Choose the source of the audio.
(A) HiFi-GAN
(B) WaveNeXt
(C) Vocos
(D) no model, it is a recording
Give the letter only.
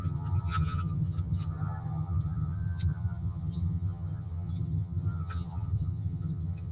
A